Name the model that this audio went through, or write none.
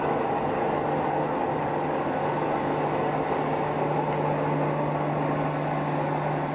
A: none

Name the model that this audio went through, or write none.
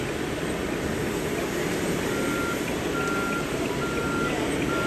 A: none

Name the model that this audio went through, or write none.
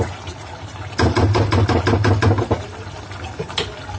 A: none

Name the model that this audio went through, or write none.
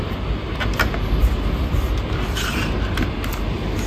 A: none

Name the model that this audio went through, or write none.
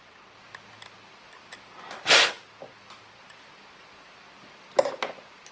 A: none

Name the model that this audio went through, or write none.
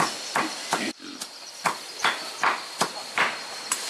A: vocoder, BigVGAN v2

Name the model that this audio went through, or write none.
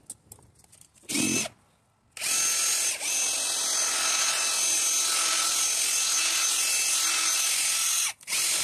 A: none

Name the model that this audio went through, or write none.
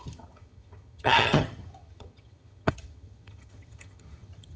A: vocoder, HiFi-GAN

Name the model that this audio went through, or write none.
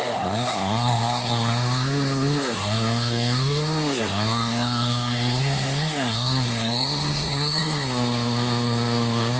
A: codec, SNAC